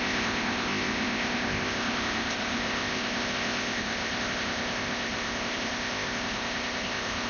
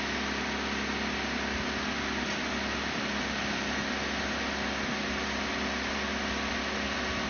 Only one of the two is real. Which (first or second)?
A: second